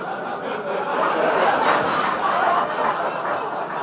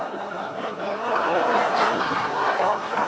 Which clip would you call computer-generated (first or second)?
second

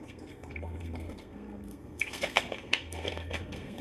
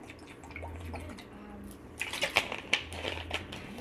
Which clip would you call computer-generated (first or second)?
first